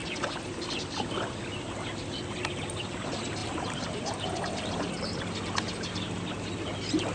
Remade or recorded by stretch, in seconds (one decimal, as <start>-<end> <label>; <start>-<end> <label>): 0.0-3.4 recorded; 3.4-4.9 remade; 4.9-7.1 recorded

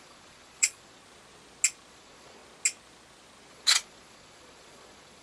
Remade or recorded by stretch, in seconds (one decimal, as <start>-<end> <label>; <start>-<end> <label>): 0.0-1.0 remade; 1.0-1.9 recorded; 1.9-2.4 remade; 2.4-3.5 recorded; 3.5-5.2 remade

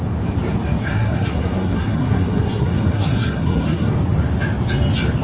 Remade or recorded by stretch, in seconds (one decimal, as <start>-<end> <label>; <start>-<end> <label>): 0.0-0.8 recorded; 0.8-3.9 remade; 3.9-5.2 recorded

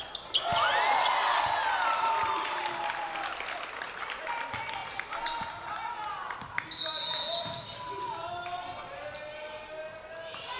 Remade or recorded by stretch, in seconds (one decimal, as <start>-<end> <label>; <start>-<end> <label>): 0.0-10.6 recorded

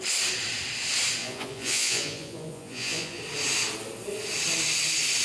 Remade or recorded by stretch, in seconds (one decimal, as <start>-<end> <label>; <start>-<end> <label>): 0.0-1.2 recorded; 1.2-3.2 remade; 3.2-5.2 recorded